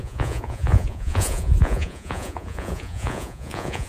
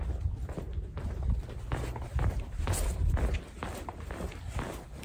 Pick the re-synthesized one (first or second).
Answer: first